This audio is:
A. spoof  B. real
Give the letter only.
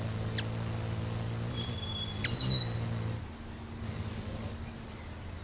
B